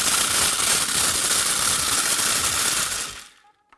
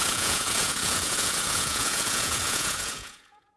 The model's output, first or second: second